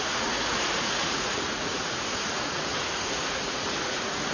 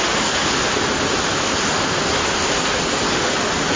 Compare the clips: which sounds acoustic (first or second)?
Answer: second